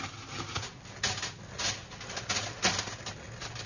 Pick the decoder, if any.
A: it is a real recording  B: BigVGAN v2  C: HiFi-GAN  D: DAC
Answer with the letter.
A